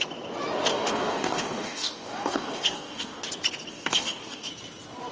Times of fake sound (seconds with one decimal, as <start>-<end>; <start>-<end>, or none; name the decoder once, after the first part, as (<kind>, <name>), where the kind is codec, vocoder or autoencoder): 0.7-3.2 (codec, DAC); 3.7-4.5